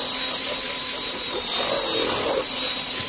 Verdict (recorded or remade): recorded